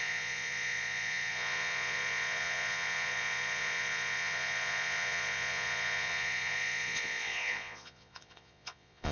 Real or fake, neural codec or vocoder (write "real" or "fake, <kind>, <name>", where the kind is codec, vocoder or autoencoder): fake, vocoder, Vocos